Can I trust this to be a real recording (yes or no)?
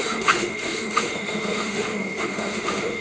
no